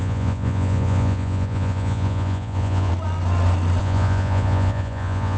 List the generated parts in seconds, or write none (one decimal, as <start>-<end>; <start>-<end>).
0.0-2.9; 3.8-5.4